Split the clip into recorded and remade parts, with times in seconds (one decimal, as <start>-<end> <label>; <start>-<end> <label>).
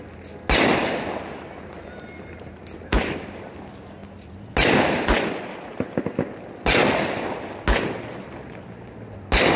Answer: 0.0-9.6 recorded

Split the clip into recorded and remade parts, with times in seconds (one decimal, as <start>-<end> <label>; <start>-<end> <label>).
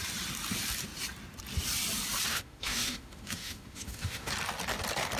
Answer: 0.0-2.3 recorded; 2.3-4.3 remade; 4.3-5.2 recorded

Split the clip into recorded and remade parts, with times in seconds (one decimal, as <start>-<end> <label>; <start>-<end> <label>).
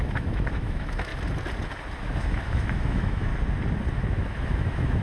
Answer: 0.0-1.1 remade; 1.1-2.0 recorded; 2.0-3.3 remade; 3.3-3.9 recorded; 3.9-5.0 remade